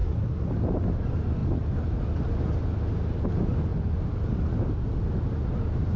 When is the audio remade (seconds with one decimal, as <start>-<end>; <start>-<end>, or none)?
0.0-0.5